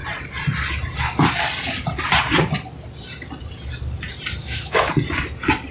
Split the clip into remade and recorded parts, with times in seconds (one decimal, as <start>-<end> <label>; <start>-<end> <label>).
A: 0.0-4.4 recorded; 4.4-4.9 remade; 4.9-5.7 recorded